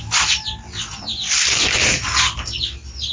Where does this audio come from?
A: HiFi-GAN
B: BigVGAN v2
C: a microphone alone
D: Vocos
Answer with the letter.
C